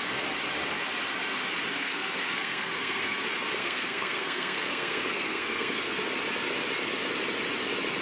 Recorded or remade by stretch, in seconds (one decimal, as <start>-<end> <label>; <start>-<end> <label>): 0.0-1.7 recorded; 1.7-3.2 remade; 3.2-3.6 recorded; 3.6-6.0 remade; 6.0-8.0 recorded